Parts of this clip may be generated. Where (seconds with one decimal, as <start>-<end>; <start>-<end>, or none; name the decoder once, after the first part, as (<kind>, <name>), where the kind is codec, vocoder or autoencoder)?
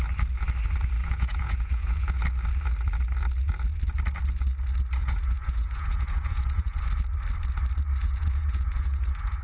1.0-2.2 (vocoder, Vocos); 5.0-6.9; 8.0-9.4